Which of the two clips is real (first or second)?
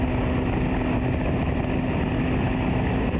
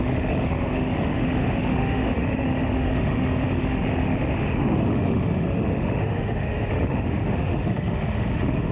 first